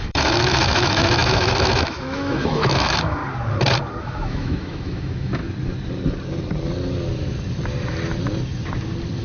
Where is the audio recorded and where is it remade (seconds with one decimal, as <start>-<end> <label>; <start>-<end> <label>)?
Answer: 0.0-3.2 remade; 3.2-4.0 recorded; 4.0-5.4 remade; 5.4-9.2 recorded